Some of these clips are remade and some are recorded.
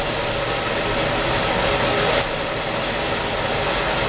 recorded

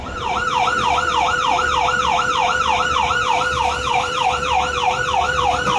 remade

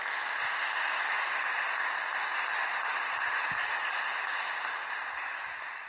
recorded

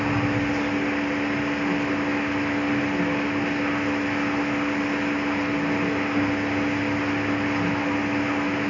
recorded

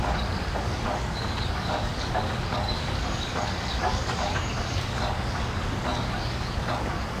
remade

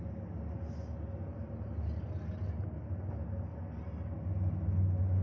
recorded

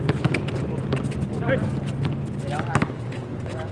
recorded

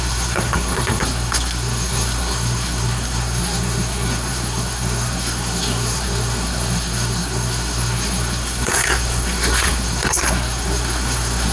remade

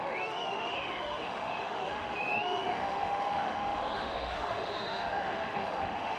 remade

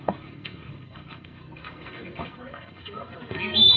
remade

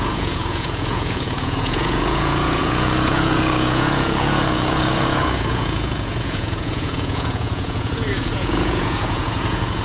remade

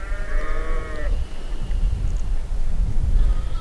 remade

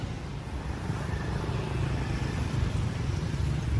remade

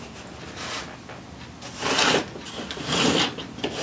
recorded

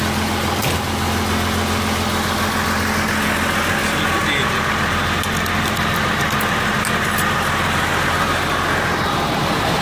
recorded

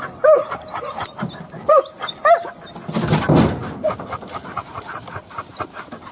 recorded